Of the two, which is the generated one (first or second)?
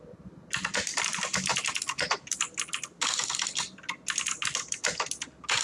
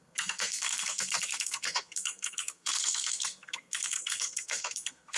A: second